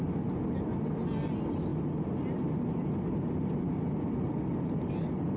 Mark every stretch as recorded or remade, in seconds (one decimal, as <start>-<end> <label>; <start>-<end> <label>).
0.0-5.4 recorded